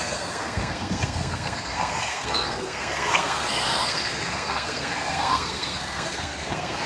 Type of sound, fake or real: fake